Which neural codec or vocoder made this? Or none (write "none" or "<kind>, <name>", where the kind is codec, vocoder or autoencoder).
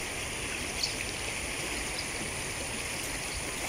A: none